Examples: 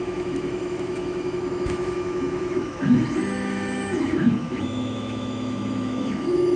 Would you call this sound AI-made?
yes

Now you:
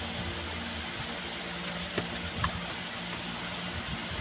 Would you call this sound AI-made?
no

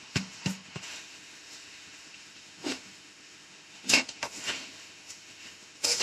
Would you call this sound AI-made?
yes